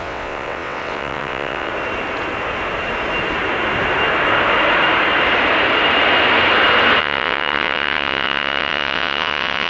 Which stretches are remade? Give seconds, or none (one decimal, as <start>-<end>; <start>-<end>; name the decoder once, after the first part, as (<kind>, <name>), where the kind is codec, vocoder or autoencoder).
0.0-1.7 (vocoder, WaveNeXt); 7.0-9.7